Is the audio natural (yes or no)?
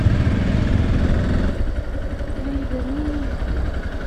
yes